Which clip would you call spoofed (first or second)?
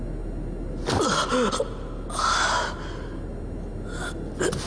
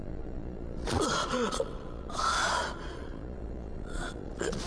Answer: second